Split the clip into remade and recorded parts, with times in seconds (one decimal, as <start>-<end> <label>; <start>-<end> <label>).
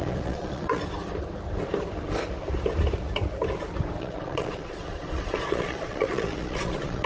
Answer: 0.0-0.8 remade; 0.8-4.0 recorded; 4.0-7.1 remade